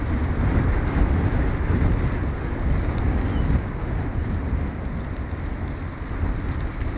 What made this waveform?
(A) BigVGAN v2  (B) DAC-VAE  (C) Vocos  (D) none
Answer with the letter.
D